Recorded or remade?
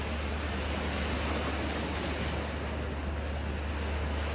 recorded